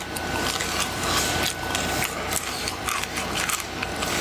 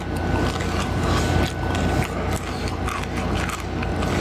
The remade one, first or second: first